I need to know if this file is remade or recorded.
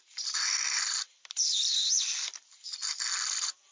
recorded